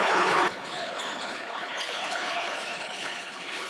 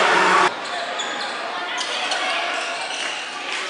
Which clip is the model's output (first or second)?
first